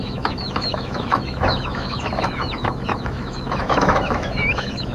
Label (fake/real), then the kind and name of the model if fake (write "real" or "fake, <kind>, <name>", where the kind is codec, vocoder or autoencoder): fake, autoencoder, DAC-VAE